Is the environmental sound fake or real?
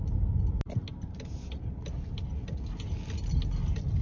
real